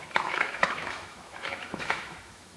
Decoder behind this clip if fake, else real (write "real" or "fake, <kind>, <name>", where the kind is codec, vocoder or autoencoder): fake, autoencoder, DAC-VAE